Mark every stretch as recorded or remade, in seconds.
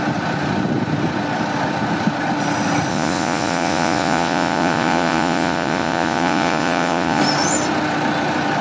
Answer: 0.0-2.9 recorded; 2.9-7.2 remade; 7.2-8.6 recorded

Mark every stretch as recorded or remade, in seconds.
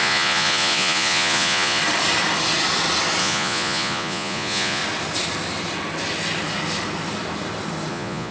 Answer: 0.0-1.8 remade; 1.8-3.2 recorded; 3.2-4.8 remade; 4.8-7.9 recorded; 7.9-8.3 remade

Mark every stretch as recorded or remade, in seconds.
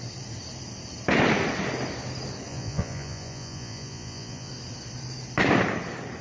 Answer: 0.0-2.5 recorded; 2.5-4.5 remade; 4.5-6.2 recorded